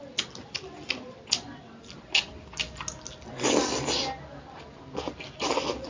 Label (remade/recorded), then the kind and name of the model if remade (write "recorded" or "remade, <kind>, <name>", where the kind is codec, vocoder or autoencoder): recorded